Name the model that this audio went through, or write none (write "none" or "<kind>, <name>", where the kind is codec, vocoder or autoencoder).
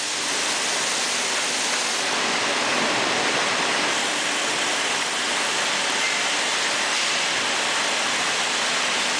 vocoder, BigVGAN v2